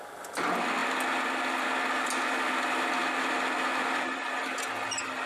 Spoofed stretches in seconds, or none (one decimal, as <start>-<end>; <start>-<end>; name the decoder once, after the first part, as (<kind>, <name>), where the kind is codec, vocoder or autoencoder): none